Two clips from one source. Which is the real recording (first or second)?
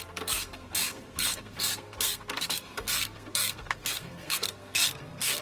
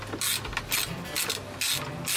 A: second